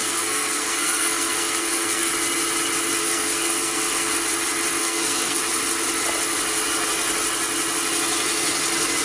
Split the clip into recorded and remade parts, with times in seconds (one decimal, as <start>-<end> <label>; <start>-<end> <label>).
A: 0.0-2.1 remade; 2.1-3.0 recorded; 3.0-4.1 remade; 4.1-4.8 recorded; 4.8-5.4 remade; 5.4-9.0 recorded